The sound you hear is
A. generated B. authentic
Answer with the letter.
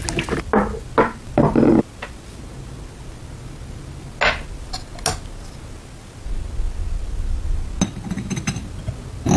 B